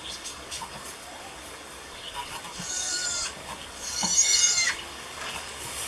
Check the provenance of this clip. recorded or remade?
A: remade